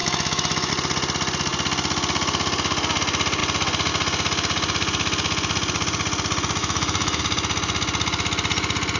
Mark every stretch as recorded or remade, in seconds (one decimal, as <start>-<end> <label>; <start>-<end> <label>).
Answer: 0.0-0.7 remade; 0.7-6.6 recorded; 6.6-7.2 remade; 7.2-9.0 recorded